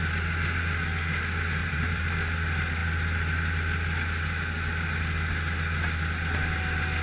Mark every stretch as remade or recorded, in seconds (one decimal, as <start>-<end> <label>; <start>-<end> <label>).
0.0-1.6 recorded; 1.6-2.1 remade; 2.1-7.0 recorded

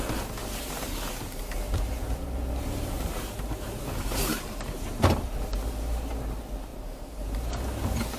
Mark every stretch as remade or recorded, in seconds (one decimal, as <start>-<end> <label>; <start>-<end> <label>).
0.0-0.4 recorded; 0.4-5.3 remade; 5.3-6.7 recorded; 6.7-7.5 remade; 7.5-8.2 recorded

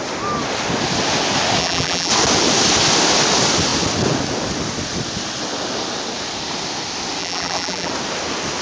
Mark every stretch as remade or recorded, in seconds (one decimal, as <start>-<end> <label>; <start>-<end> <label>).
0.0-1.6 recorded; 1.6-2.1 remade; 2.1-7.2 recorded; 7.2-7.9 remade; 7.9-8.6 recorded

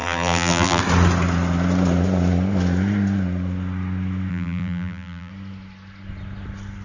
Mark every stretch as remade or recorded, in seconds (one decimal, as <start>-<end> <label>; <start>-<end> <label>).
0.0-0.8 remade; 0.8-4.3 recorded; 4.3-5.3 remade; 5.3-6.8 recorded

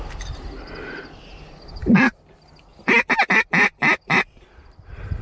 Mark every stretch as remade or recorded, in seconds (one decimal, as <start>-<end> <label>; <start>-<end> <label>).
0.0-5.2 recorded

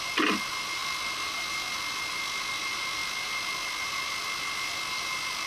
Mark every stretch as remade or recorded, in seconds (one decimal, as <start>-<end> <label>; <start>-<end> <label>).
0.0-5.5 recorded